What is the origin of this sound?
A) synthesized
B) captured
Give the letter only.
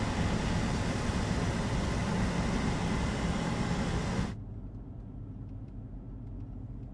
B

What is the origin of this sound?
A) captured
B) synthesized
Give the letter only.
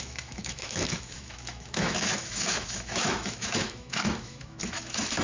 B